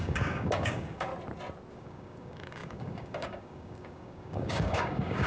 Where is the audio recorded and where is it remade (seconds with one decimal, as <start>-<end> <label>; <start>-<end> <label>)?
0.0-1.1 remade; 1.1-1.7 recorded; 1.7-5.3 remade